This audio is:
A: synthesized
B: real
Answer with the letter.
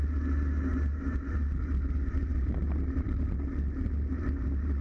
B